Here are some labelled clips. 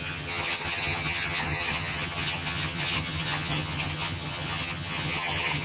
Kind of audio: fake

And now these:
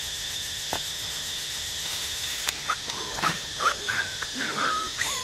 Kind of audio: fake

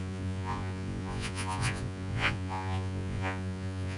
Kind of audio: fake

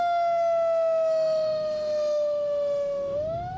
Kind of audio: fake